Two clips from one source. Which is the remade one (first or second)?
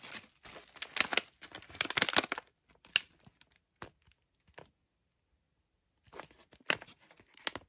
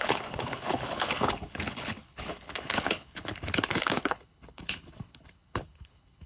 second